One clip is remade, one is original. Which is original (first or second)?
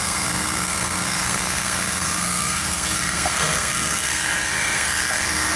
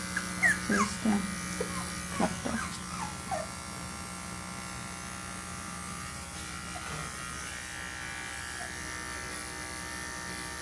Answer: second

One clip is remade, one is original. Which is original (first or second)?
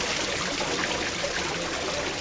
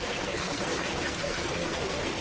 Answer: first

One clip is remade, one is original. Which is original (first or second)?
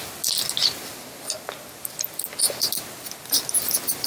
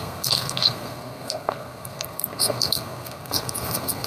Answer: first